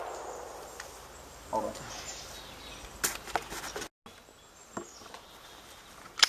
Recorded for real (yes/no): yes